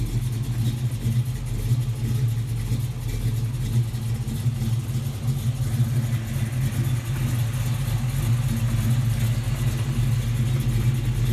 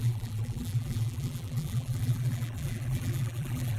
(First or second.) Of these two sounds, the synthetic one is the second